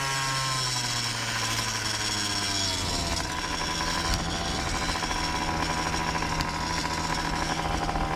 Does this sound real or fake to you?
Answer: real